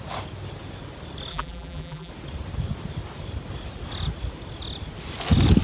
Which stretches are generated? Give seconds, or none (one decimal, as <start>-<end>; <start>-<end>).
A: 1.3-2.1